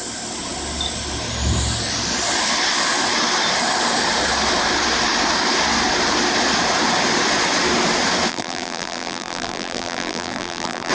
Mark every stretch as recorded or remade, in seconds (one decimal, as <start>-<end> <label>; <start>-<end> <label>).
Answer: 0.0-8.3 recorded; 8.3-10.9 remade